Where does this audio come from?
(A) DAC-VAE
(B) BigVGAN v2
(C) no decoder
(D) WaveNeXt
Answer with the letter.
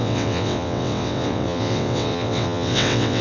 D